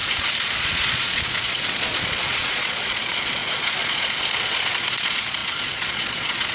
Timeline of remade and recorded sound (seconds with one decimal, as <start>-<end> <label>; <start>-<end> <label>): 0.0-6.5 remade